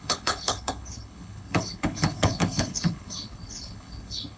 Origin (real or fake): fake